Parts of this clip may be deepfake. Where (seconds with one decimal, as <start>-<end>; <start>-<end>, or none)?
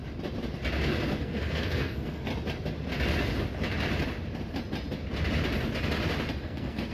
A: 1.2-2.3; 6.4-6.9